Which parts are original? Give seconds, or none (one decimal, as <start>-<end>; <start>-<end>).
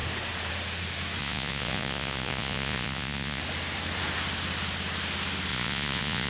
0.0-1.2; 3.4-5.5